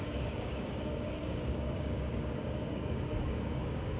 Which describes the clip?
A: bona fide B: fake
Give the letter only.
B